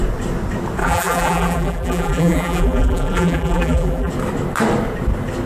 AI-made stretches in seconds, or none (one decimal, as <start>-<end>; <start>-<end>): 0.8-4.1